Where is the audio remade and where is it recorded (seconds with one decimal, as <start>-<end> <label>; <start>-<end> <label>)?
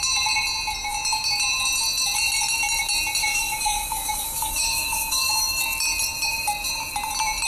0.0-3.2 recorded; 3.2-5.6 remade; 5.6-7.5 recorded